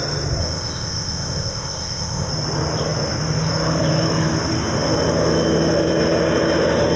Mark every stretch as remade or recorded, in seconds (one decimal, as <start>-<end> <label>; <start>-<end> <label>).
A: 0.0-0.4 recorded; 0.4-2.3 remade; 2.3-7.0 recorded